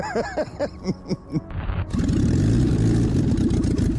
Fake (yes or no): no